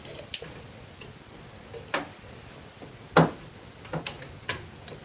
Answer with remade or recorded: recorded